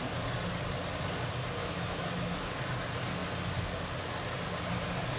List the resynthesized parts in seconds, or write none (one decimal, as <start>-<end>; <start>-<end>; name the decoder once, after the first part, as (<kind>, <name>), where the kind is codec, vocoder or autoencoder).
1.6-2.6 (autoencoder, DAC-VAE)